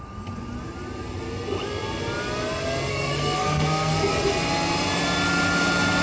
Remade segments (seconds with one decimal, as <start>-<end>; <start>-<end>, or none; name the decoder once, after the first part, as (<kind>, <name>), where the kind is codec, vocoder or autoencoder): 2.9-4.1 (codec, SNAC)